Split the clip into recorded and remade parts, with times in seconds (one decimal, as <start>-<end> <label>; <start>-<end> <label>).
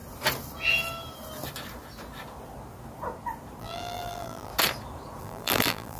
0.0-3.6 recorded; 3.6-4.5 remade; 4.5-5.2 recorded; 5.2-6.0 remade